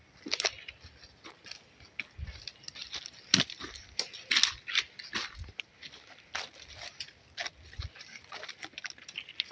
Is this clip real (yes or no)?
yes